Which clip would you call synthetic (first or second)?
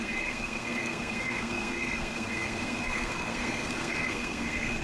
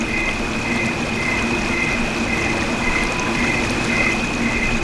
first